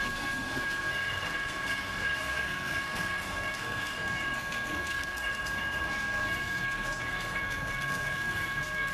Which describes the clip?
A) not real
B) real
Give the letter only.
A